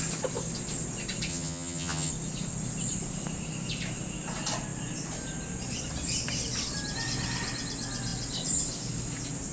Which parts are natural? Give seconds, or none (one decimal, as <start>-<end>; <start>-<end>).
0.0-1.3; 2.1-9.5